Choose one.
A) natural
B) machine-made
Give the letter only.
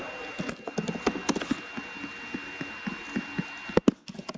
A